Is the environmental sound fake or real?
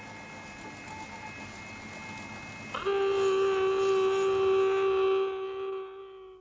real